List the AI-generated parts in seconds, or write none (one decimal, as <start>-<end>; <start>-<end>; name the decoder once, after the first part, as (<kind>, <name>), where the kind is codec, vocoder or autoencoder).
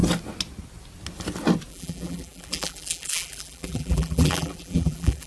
1.7-5.3 (vocoder, BigVGAN v2)